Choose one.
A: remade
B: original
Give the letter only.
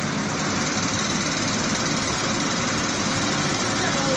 B